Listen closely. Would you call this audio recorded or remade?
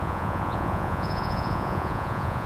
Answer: remade